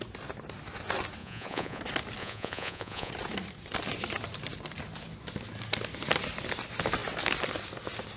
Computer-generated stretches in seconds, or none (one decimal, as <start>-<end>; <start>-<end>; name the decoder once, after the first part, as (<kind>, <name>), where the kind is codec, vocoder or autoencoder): 1.2-1.8 (vocoder, Vocos); 2.2-3.1